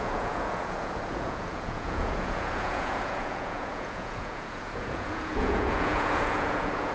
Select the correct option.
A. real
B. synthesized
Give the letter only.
B